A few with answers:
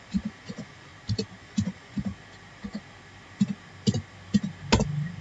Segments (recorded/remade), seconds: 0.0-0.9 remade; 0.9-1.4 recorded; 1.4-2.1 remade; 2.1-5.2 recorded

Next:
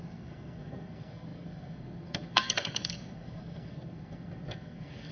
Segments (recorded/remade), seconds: 0.0-5.1 remade

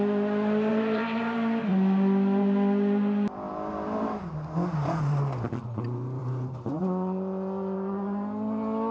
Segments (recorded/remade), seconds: 0.0-0.7 recorded; 0.7-1.6 remade; 1.6-6.2 recorded; 6.2-6.8 remade; 6.8-8.9 recorded